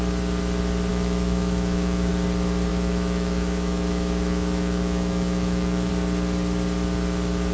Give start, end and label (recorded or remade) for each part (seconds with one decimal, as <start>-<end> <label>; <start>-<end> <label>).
0.0-0.9 recorded; 0.9-2.1 remade; 2.1-2.7 recorded; 2.7-5.9 remade; 5.9-7.5 recorded